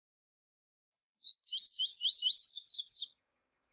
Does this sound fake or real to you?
fake